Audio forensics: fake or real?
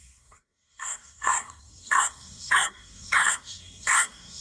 fake